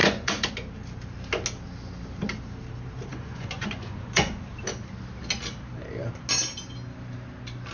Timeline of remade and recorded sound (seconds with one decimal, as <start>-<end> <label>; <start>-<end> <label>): 0.0-0.5 remade; 0.5-3.1 recorded; 3.1-4.3 remade; 4.3-7.7 recorded